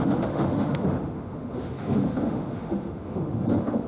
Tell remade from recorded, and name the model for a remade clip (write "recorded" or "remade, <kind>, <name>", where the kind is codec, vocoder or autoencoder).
remade, autoencoder, DAC-VAE